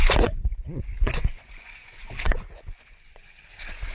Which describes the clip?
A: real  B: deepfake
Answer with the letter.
B